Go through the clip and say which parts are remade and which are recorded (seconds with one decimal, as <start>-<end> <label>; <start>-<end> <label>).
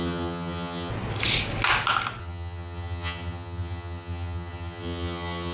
0.0-0.9 remade; 0.9-2.2 recorded; 2.2-5.5 remade